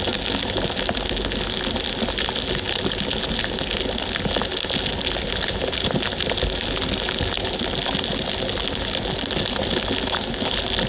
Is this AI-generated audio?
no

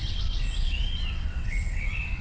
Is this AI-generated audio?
yes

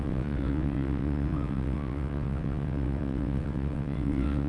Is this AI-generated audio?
yes